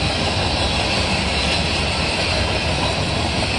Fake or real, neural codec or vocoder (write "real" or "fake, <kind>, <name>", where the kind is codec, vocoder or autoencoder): real